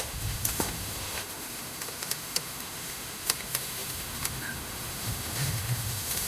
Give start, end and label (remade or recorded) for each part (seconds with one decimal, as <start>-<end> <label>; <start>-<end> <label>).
0.0-6.3 remade